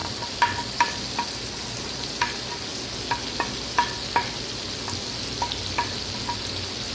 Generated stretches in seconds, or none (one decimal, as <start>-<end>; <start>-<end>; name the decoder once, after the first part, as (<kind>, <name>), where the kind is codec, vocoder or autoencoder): none